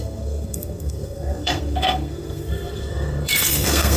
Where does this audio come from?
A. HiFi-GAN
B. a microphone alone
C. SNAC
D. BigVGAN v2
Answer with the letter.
C